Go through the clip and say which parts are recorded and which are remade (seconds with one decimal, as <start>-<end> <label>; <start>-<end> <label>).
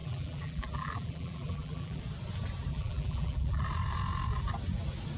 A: 0.0-2.0 remade; 2.0-2.7 recorded; 2.7-3.6 remade; 3.6-5.2 recorded